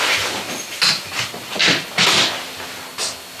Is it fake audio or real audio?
real